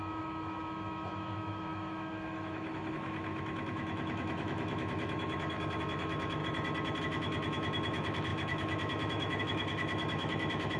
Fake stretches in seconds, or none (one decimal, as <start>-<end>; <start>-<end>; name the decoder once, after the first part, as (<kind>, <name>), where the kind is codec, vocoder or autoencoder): 0.0-6.4 (autoencoder, DAC-VAE); 7.0-10.8